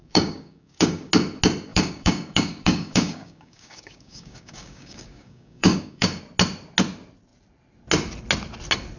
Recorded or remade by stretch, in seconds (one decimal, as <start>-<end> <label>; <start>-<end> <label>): 0.0-1.1 remade; 1.1-1.7 recorded; 1.7-6.2 remade; 6.2-9.0 recorded